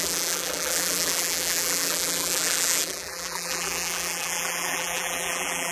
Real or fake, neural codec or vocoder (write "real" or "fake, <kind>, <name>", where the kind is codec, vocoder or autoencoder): fake, vocoder, BigVGAN v2